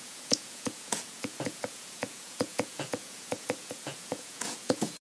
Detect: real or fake fake